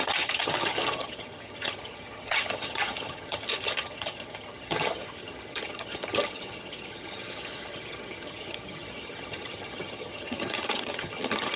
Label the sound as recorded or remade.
remade